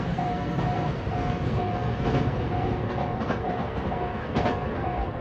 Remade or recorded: remade